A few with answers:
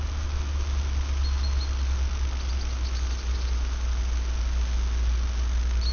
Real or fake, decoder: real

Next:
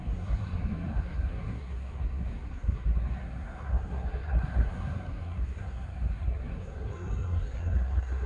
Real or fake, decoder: fake, codec, SNAC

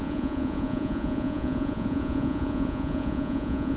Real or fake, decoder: fake, vocoder, Vocos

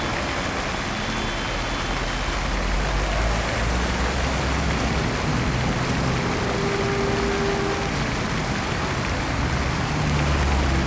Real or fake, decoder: real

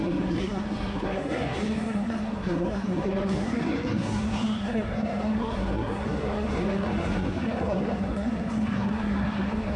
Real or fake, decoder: fake, codec, SNAC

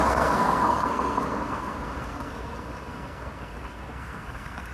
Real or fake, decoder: fake, codec, SNAC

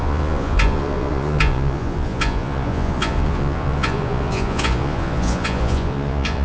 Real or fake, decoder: fake, vocoder, Vocos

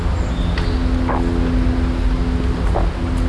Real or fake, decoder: real